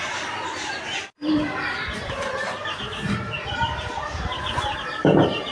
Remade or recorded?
remade